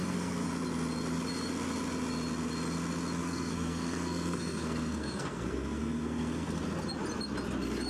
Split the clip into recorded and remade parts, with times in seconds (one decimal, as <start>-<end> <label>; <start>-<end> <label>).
0.0-0.5 remade; 0.5-3.2 recorded; 3.2-6.5 remade; 6.5-7.9 recorded